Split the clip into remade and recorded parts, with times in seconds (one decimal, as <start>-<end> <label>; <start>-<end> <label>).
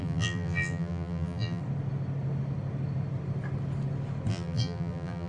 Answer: 0.0-1.6 remade; 1.6-4.3 recorded; 4.3-5.3 remade